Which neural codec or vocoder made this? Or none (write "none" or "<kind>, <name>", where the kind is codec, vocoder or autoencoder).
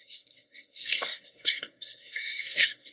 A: codec, SNAC